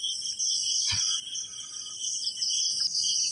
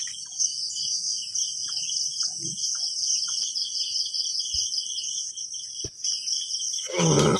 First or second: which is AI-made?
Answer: second